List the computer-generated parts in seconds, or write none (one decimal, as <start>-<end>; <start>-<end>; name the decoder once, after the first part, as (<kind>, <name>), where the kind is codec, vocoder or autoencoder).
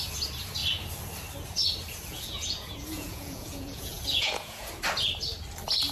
2.1-4.7 (vocoder, Vocos)